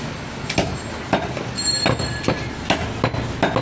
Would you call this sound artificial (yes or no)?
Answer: no